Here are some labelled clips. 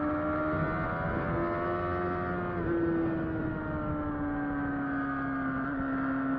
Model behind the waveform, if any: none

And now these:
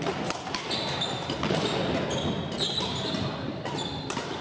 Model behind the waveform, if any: none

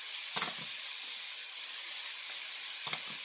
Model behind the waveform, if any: none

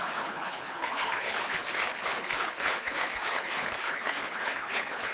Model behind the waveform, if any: codec, HILCodec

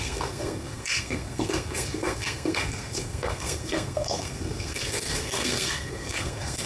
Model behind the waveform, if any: codec, SNAC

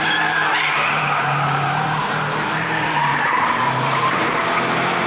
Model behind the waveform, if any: vocoder, BigVGAN v2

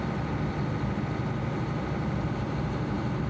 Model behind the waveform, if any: none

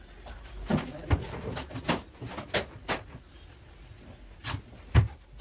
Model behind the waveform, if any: none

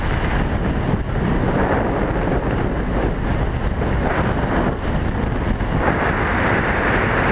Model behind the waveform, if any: none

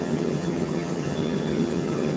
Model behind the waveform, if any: vocoder, HiFi-GAN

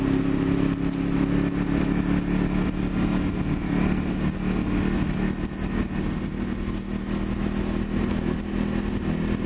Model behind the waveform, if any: none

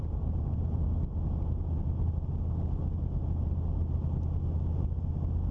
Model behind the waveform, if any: none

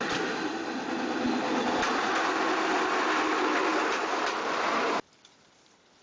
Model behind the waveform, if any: none